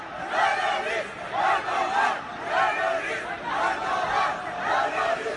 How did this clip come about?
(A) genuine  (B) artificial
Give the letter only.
A